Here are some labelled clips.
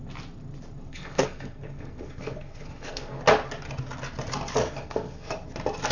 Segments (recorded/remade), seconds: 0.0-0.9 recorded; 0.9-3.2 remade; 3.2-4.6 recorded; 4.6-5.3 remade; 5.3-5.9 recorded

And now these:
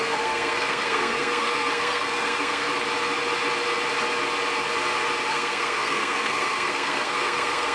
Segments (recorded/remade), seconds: 0.0-2.7 remade; 2.7-5.3 recorded; 5.3-7.7 remade

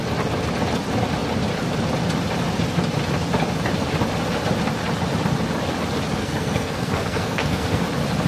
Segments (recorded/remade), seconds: 0.0-6.2 recorded; 6.2-7.8 remade; 7.8-8.3 recorded

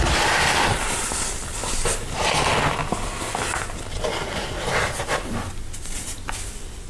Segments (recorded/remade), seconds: 0.0-6.9 recorded